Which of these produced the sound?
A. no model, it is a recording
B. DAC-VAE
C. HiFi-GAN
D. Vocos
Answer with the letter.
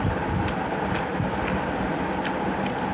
A